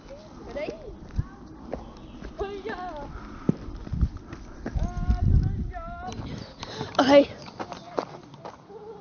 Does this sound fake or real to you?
real